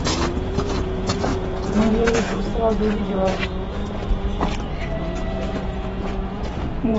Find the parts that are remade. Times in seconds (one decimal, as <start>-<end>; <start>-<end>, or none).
0.0-2.5; 3.0-3.8; 5.5-7.0